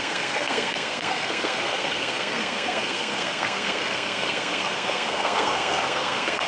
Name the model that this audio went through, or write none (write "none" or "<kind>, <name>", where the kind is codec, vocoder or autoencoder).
codec, SNAC